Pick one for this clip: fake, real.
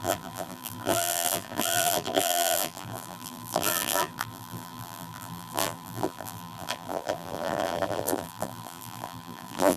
fake